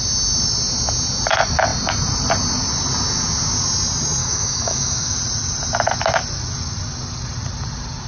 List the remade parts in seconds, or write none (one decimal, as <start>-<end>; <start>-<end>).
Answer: 4.2-5.2